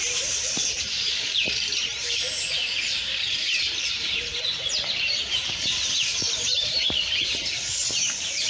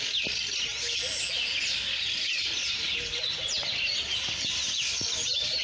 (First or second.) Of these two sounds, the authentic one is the second